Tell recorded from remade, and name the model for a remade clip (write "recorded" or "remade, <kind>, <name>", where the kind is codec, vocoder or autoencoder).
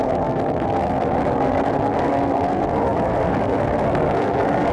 remade, codec, SNAC